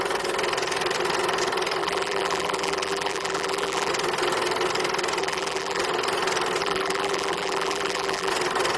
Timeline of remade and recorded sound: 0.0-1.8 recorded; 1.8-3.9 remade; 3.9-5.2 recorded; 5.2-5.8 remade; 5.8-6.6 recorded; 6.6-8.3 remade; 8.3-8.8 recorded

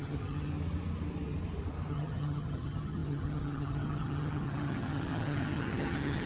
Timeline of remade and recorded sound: 0.0-0.5 remade; 0.5-1.9 recorded; 1.9-6.3 remade